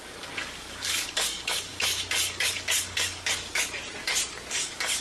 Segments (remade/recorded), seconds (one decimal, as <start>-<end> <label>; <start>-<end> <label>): 0.0-3.8 remade; 3.8-4.5 recorded; 4.5-5.0 remade